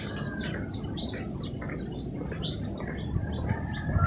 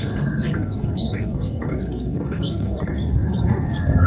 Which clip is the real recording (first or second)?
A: first